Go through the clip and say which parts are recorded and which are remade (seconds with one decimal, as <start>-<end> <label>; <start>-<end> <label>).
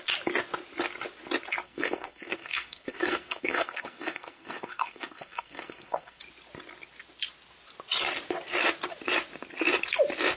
0.0-1.6 recorded; 1.6-6.2 remade; 6.2-10.4 recorded